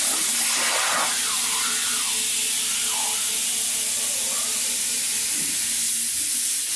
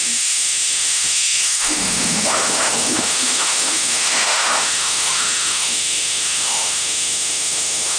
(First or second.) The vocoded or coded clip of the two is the second